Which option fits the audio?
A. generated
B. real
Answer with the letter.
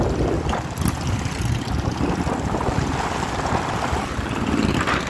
B